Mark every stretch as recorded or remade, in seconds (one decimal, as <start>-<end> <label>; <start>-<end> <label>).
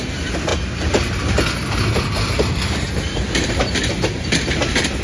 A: 0.0-5.0 recorded